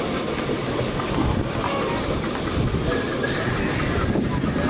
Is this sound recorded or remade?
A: recorded